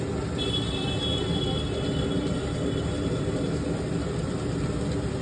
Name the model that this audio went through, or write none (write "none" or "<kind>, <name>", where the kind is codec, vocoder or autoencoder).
none